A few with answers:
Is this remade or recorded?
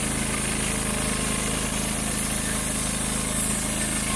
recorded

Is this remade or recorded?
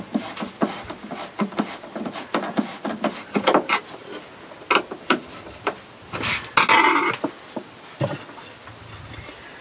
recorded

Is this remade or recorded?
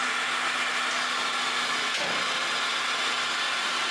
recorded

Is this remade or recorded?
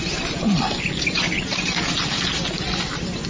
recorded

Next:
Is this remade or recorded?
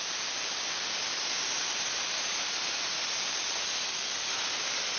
recorded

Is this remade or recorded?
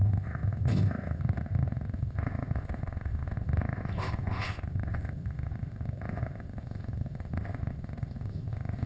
remade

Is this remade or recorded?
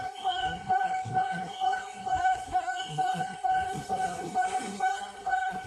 remade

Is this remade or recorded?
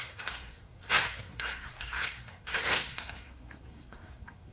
remade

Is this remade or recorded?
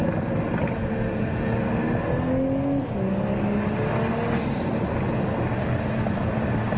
recorded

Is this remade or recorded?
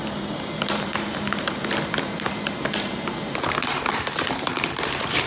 remade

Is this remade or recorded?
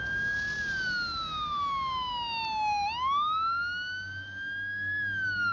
recorded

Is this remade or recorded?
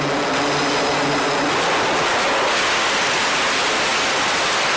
recorded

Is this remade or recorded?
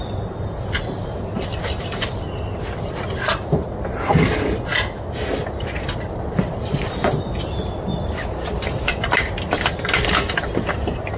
recorded